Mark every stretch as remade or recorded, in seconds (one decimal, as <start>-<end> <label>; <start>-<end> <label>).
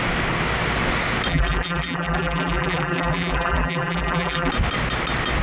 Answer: 0.0-1.3 recorded; 1.3-4.5 remade; 4.5-5.4 recorded